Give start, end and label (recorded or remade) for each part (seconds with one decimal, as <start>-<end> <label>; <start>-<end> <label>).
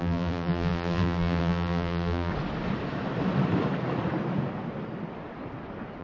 0.0-2.3 remade; 2.3-6.0 recorded